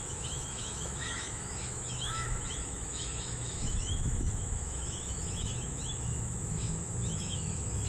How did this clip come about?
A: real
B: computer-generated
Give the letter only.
B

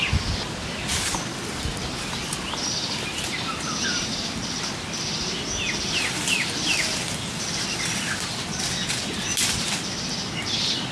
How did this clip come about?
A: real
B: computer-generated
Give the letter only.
A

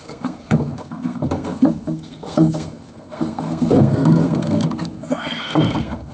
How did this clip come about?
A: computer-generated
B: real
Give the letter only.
A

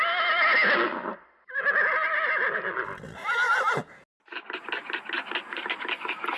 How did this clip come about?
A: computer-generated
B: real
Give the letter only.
B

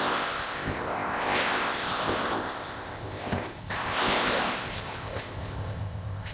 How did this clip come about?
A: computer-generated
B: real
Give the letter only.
A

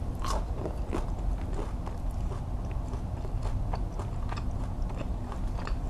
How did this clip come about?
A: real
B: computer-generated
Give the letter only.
A